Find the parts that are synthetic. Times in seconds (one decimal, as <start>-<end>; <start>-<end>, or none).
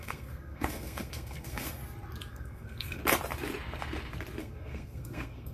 0.0-1.8; 2.3-3.0; 4.4-5.5